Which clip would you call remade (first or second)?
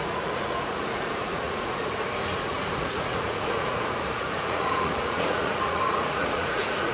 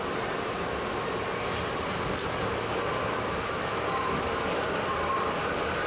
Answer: first